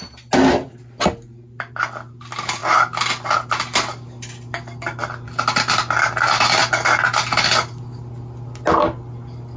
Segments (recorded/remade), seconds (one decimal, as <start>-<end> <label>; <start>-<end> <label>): 0.0-9.6 recorded